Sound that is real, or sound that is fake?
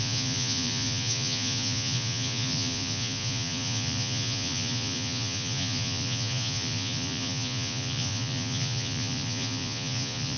fake